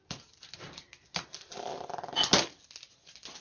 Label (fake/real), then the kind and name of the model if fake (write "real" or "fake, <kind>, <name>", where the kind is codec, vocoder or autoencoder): real